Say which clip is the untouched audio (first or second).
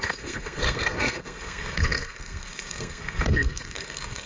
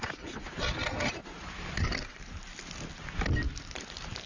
second